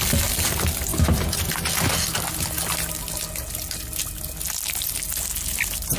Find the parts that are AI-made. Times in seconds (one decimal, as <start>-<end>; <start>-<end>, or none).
0.9-1.4